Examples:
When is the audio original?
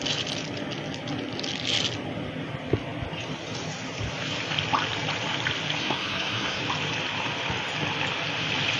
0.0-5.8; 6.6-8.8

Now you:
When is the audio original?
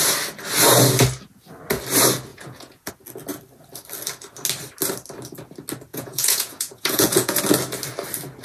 0.0-2.3; 2.9-5.9; 7.4-8.4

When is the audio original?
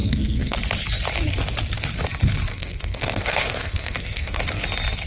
0.6-2.5; 4.4-5.1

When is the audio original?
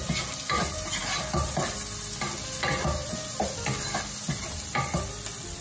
0.0-5.6